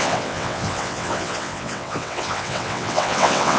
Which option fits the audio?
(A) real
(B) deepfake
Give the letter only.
B